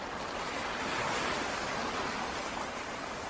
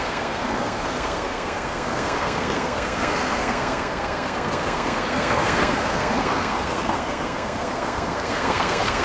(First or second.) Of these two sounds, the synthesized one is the second